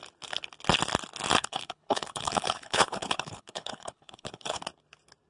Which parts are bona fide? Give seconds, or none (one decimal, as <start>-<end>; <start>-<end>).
0.0-1.4; 4.6-5.3